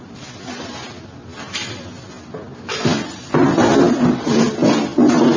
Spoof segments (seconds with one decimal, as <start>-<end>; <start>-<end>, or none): none